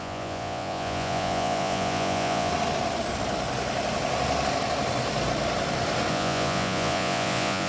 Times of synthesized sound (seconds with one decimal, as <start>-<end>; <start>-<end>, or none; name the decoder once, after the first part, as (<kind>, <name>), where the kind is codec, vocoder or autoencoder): 0.0-2.5 (vocoder, Vocos); 6.1-7.7